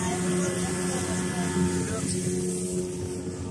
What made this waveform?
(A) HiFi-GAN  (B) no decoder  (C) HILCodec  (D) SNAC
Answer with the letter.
B